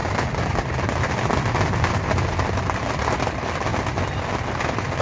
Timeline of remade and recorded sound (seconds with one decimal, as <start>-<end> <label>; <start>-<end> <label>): 0.0-5.0 recorded